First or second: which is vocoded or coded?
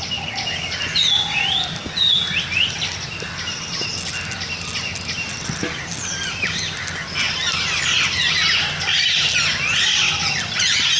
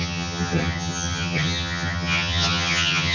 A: second